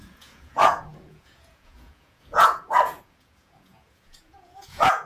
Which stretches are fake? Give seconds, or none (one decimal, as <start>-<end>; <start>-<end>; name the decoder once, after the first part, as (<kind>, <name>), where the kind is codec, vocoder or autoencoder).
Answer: 0.0-5.1 (vocoder, Vocos)